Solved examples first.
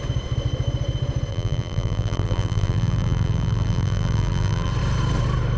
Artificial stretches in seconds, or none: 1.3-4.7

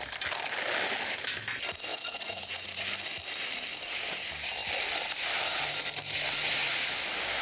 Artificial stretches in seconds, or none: 1.9-2.8

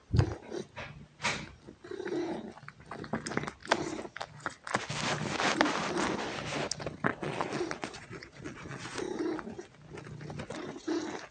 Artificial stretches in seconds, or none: 7.1-9.0

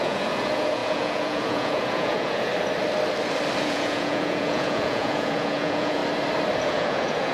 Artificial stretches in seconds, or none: 0.0-2.5; 3.6-6.0; 6.6-7.3